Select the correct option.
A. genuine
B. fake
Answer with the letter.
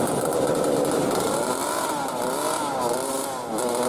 A